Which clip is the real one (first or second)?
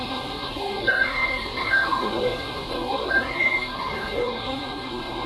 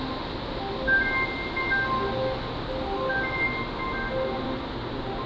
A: second